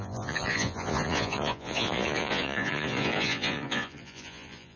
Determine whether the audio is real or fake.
fake